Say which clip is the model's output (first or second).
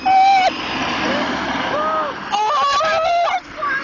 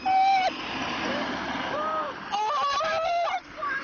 second